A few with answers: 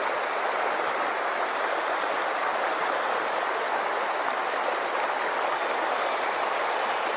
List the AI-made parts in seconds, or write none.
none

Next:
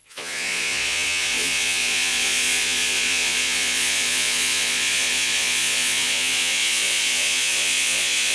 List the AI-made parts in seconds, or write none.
0.0-8.3 (vocoder, Vocos)

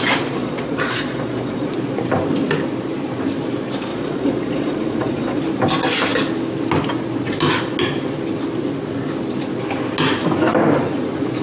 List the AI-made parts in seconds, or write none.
0.4-1.7 (vocoder, Vocos); 3.9-5.4

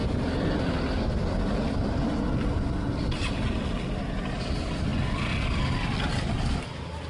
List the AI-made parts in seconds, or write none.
none

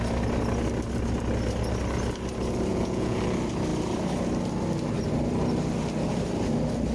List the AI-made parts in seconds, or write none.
2.7-3.2 (vocoder, Vocos)

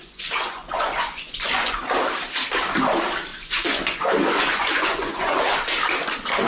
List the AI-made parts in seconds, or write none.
0.0-1.8 (vocoder, Vocos); 3.3-5.4

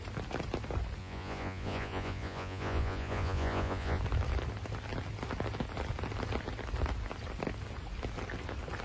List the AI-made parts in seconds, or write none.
1.0-4.0 (vocoder, Vocos)

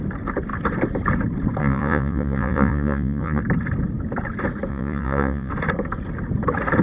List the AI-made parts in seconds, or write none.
1.6-3.4 (vocoder, Vocos); 4.7-5.5